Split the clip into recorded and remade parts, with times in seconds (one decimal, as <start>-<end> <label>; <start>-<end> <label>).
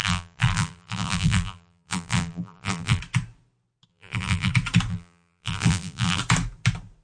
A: 0.0-3.0 remade; 3.0-3.9 recorded; 3.9-4.5 remade; 4.5-4.9 recorded; 4.9-6.2 remade; 6.2-7.0 recorded